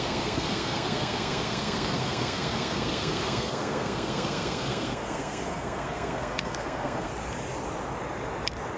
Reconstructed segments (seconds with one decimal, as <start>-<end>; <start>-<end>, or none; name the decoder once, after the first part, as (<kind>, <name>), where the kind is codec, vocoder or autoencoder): 0.0-7.1 (codec, SNAC)